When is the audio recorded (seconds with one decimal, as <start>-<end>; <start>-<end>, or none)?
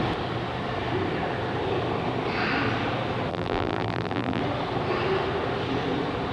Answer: 0.0-3.3; 4.4-6.3